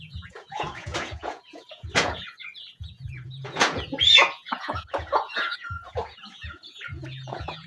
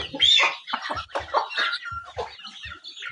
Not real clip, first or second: first